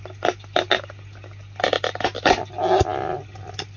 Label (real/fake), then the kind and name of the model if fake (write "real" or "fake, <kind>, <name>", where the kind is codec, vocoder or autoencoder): real